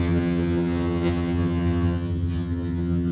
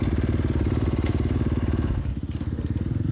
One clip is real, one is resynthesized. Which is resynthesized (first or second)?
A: first